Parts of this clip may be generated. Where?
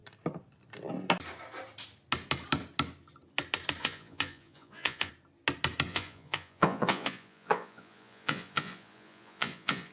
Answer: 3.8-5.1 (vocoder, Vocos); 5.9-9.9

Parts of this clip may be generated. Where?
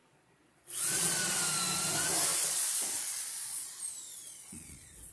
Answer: 0.0-1.3 (vocoder, Vocos); 2.3-3.8; 4.2-5.1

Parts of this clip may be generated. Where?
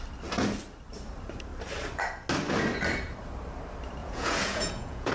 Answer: 4.0-5.1 (vocoder, Vocos)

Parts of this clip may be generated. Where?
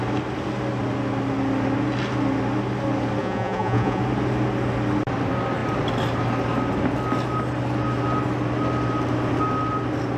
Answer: 3.2-4.0 (vocoder, Vocos)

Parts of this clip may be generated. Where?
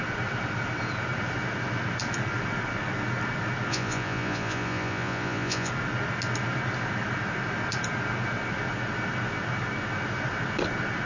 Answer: 3.7-5.7 (vocoder, Vocos)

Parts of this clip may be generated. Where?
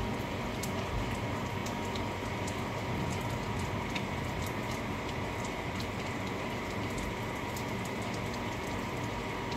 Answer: none